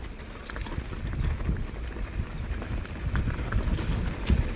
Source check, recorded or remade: recorded